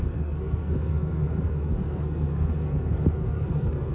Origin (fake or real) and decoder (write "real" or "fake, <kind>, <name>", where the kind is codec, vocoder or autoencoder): fake, codec, SNAC